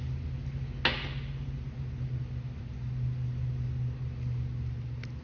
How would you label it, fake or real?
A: real